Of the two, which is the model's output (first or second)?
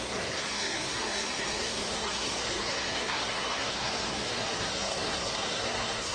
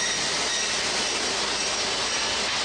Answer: first